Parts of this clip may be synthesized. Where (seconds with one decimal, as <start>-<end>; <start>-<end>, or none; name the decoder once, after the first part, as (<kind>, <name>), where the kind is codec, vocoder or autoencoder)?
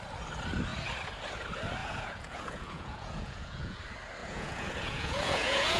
1.8-3.8 (vocoder, Vocos); 4.2-5.8